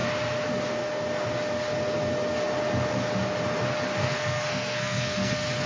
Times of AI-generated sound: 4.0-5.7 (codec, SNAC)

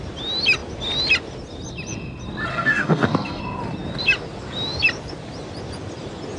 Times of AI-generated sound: 2.5-3.4 (codec, SNAC)

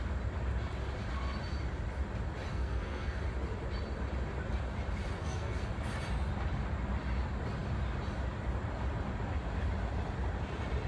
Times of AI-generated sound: 2.5-3.2 (codec, SNAC); 5.2-5.7